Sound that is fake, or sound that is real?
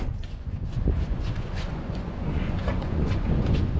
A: fake